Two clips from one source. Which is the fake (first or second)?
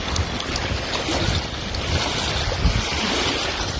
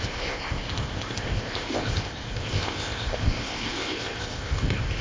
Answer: second